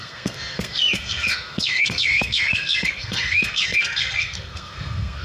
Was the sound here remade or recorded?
remade